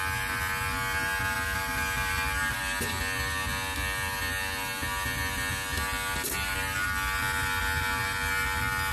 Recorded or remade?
recorded